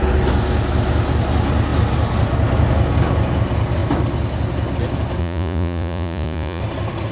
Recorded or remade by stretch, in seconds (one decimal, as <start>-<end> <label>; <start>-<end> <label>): 0.0-5.2 recorded; 5.2-6.6 remade; 6.6-7.1 recorded